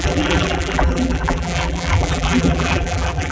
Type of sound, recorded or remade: remade